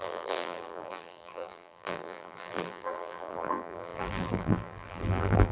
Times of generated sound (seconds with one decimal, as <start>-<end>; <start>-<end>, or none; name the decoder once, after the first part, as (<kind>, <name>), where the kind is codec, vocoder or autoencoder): 0.0-5.5 (vocoder, BigVGAN v2)